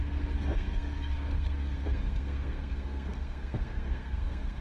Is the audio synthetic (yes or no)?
yes